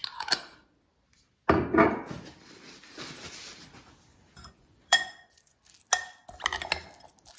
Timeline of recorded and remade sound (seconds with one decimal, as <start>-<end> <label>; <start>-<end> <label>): 0.0-4.1 recorded; 4.1-5.6 remade; 5.6-7.4 recorded